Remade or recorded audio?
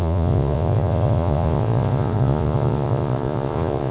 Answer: remade